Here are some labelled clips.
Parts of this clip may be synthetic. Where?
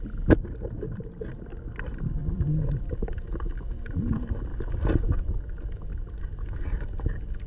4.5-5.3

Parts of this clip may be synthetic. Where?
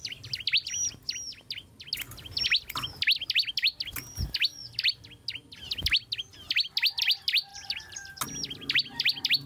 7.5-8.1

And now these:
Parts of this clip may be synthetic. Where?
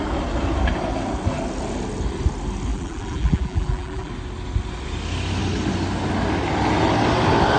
2.7-4.1